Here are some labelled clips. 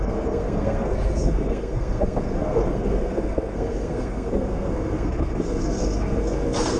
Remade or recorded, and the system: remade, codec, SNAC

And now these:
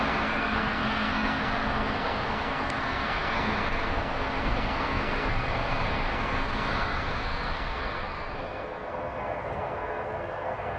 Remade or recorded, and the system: remade, codec, SNAC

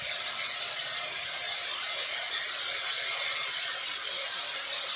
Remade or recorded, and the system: recorded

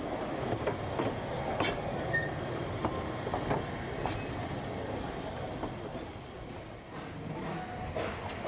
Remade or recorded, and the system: recorded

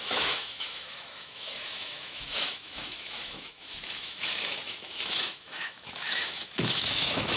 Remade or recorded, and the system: remade, autoencoder, DAC-VAE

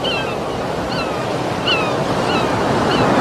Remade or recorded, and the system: recorded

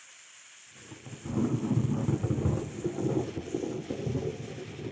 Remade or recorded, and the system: recorded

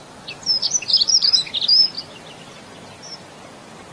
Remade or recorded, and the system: remade, vocoder, BigVGAN v2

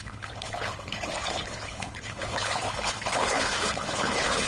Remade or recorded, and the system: remade, codec, HILCodec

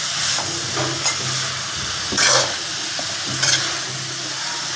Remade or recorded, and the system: recorded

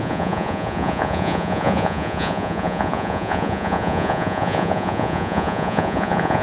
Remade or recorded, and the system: remade, vocoder, Vocos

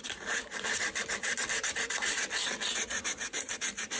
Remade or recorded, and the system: remade, vocoder, BigVGAN v2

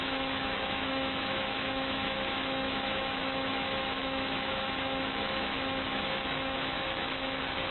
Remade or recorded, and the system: remade, autoencoder, DAC-VAE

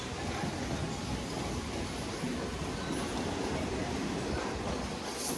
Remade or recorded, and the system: recorded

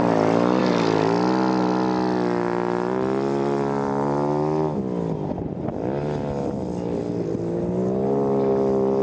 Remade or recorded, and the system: recorded